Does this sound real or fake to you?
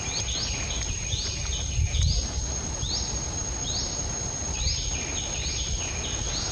real